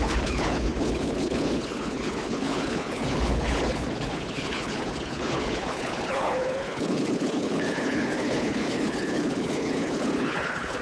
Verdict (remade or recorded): remade